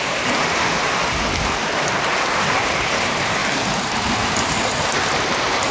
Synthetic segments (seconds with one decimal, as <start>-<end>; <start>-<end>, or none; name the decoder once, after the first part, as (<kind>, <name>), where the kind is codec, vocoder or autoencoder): 0.0-1.0 (vocoder, BigVGAN v2); 2.3-3.4